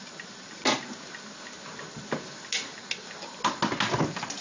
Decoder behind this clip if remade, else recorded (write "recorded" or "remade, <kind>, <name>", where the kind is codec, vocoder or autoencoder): recorded